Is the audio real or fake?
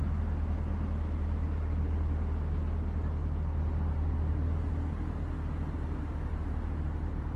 real